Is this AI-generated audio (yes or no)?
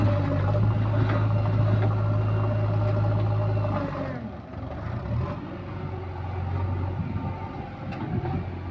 no